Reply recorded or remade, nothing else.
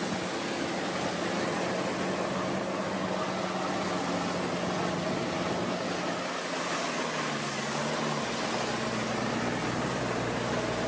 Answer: recorded